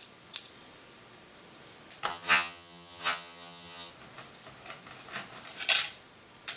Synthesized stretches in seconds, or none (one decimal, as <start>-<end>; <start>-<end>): 2.1-3.9